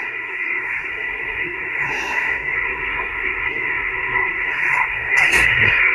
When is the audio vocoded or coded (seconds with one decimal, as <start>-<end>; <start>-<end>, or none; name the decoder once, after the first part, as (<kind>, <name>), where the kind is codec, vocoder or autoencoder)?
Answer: 0.0-5.9 (codec, SNAC)